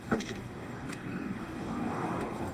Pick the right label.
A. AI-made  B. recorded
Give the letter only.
A